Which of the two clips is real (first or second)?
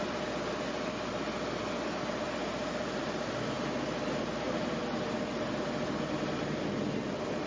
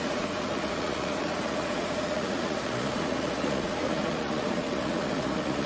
first